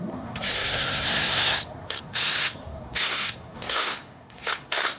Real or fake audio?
fake